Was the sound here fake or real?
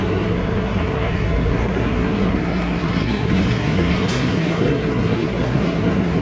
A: fake